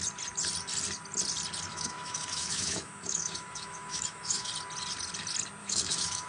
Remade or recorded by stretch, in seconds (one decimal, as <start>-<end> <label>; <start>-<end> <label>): 0.0-1.7 recorded; 1.7-4.5 remade; 4.5-5.6 recorded; 5.6-6.3 remade